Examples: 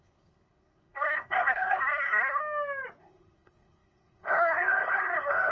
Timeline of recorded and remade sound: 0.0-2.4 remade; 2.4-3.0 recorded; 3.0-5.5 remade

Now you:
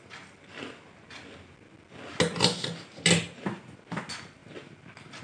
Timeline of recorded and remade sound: 0.0-5.2 recorded